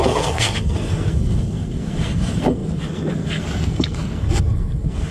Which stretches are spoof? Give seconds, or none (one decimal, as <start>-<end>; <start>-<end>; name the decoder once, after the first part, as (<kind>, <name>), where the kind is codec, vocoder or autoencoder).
0.0-5.1 (codec, SNAC)

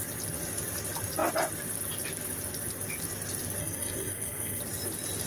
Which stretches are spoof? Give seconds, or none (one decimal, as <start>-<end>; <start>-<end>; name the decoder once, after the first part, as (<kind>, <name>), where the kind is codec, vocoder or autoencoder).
3.6-4.6 (codec, SNAC)

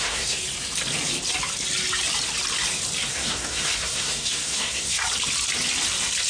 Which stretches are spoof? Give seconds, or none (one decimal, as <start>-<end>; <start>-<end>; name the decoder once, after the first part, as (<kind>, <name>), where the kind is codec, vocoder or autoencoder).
0.0-0.4 (codec, SNAC); 3.1-5.0

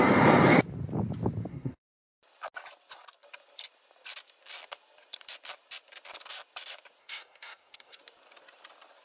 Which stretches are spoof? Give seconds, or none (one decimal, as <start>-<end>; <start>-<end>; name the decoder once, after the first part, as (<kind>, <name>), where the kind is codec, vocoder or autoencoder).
1.5-2.0 (codec, SNAC); 7.0-8.0